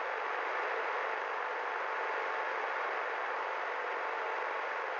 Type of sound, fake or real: real